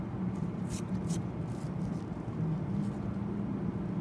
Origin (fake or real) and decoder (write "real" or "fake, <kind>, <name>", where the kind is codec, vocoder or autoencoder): real